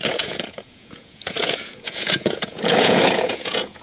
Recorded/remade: remade